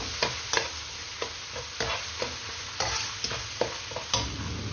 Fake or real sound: real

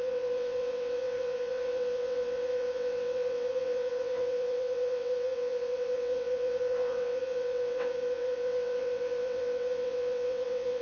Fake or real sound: fake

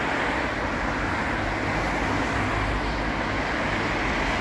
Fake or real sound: real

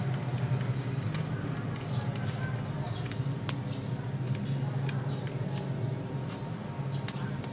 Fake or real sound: real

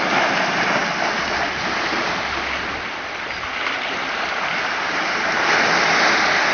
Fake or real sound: real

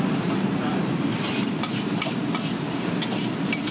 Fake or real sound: fake